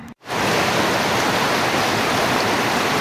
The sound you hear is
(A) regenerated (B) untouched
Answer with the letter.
A